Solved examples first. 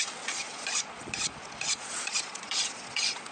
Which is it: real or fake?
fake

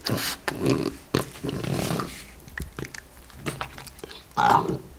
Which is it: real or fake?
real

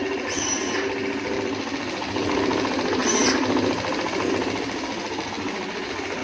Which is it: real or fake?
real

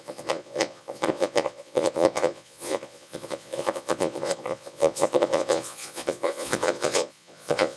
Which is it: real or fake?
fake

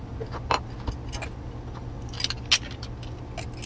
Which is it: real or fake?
real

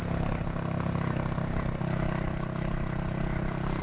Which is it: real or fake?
real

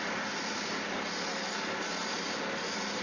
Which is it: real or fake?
real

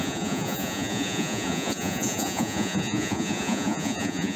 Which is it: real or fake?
fake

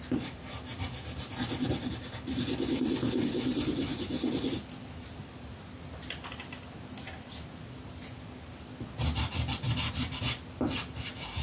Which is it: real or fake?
real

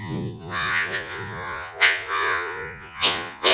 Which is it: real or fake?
fake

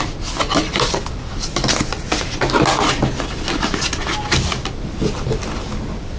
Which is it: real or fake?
real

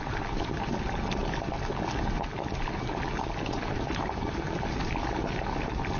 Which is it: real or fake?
real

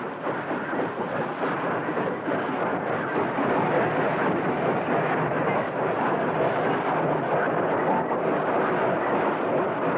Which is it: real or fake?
real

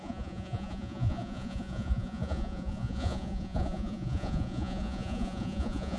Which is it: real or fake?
fake